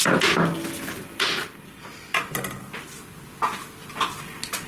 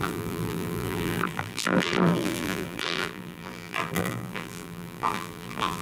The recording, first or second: first